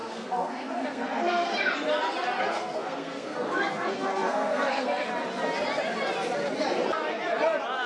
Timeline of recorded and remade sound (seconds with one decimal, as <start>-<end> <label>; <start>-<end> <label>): 0.0-1.5 remade; 1.5-2.4 recorded; 2.4-5.1 remade; 5.1-7.9 recorded